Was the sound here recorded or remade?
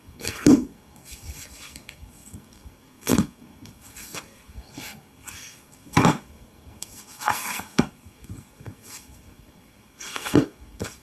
remade